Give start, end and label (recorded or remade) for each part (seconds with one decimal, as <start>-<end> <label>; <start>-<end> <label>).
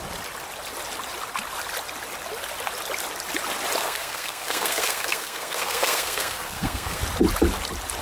0.0-3.8 recorded; 3.8-7.0 remade; 7.0-8.0 recorded